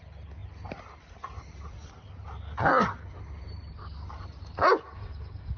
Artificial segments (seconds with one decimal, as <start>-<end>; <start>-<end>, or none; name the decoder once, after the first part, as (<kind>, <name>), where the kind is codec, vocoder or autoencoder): none